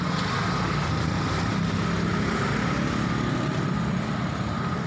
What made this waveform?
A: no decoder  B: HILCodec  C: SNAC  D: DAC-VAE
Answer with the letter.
A